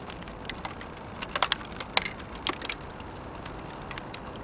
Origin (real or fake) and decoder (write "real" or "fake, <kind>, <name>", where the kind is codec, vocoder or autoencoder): real